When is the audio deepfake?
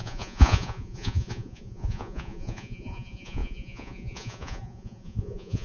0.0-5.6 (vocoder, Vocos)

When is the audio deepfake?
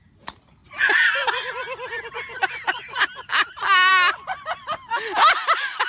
none